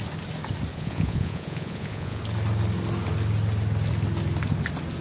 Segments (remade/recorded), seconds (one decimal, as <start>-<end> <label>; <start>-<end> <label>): 0.0-0.7 recorded; 0.7-2.2 remade; 2.2-5.0 recorded